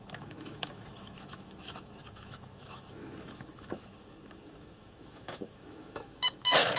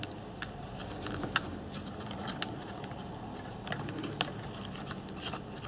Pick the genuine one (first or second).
second